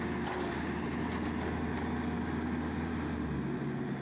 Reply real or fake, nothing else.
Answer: real